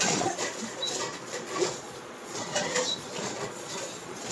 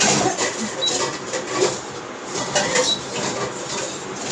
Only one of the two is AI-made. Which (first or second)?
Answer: first